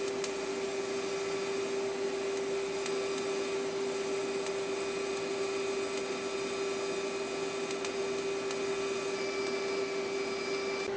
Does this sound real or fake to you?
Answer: real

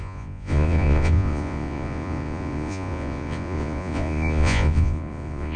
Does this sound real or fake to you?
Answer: fake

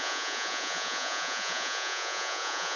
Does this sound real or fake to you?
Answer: fake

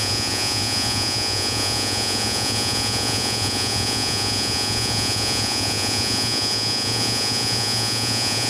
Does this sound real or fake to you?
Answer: fake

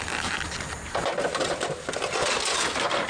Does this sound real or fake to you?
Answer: real